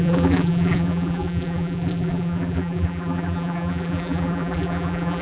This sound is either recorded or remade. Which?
remade